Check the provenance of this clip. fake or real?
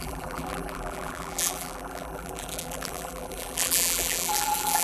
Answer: fake